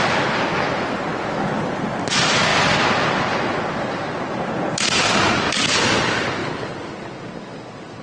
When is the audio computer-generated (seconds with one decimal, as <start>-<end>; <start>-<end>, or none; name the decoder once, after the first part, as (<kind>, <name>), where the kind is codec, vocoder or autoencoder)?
none